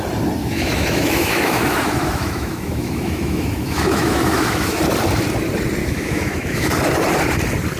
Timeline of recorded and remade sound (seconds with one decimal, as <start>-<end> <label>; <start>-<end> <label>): 0.0-0.4 recorded; 0.4-4.8 remade; 4.8-5.8 recorded; 5.8-6.7 remade; 6.7-7.8 recorded